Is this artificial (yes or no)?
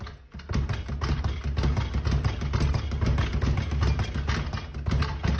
no